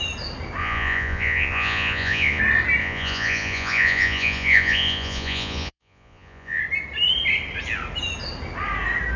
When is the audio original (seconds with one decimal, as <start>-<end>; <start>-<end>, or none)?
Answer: 0.0-0.6; 2.4-2.8; 6.6-9.2